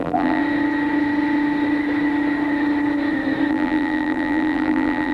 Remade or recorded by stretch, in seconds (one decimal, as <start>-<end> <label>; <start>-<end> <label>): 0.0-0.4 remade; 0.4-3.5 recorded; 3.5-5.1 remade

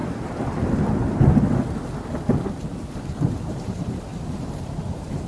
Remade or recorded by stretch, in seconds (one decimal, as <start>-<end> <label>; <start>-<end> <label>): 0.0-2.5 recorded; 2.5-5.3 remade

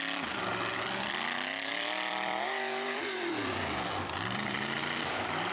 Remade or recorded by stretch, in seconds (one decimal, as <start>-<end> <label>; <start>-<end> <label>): 0.0-5.5 remade